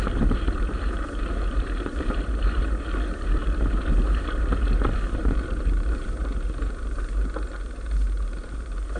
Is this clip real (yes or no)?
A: no